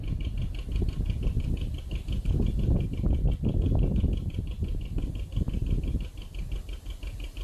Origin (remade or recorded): recorded